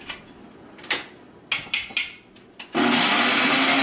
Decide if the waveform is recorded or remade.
recorded